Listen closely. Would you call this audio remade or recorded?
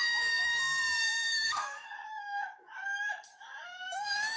remade